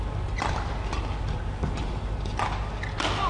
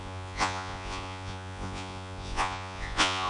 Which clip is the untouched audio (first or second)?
first